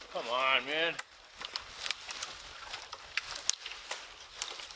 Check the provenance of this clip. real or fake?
real